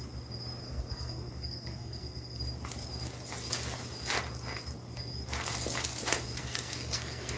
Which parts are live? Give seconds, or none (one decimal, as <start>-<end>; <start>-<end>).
0.0-0.6; 2.4-6.4